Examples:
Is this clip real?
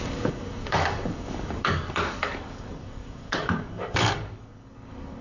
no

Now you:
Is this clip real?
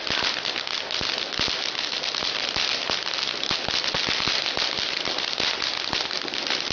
yes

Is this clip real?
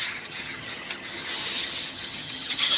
no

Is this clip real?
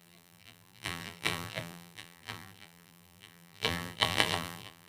no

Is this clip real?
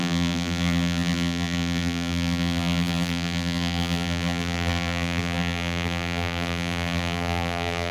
no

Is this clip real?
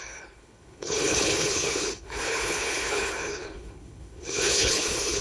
no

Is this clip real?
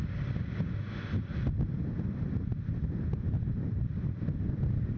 yes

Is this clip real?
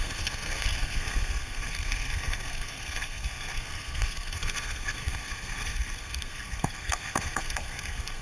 no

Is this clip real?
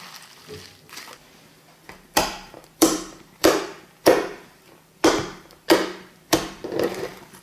no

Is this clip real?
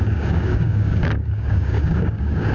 no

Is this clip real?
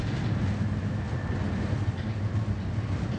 yes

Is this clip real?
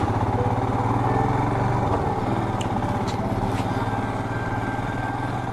yes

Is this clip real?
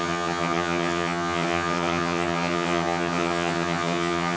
no